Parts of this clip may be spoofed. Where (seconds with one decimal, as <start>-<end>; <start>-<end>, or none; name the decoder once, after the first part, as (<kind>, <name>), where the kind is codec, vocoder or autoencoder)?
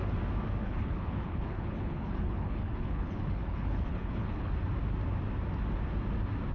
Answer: 0.6-4.5 (codec, HILCodec)